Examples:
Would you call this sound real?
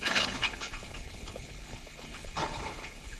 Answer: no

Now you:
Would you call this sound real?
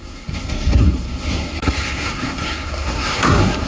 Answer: no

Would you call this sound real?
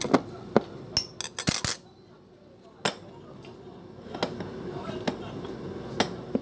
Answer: yes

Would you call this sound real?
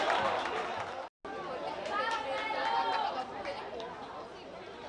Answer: yes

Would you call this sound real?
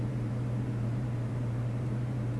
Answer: no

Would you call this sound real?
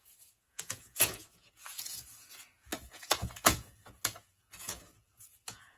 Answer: no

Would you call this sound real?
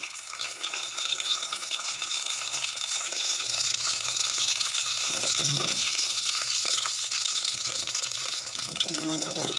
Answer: no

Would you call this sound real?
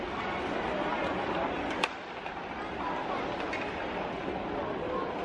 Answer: yes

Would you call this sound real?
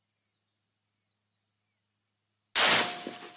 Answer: yes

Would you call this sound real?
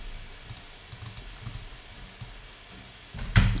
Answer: yes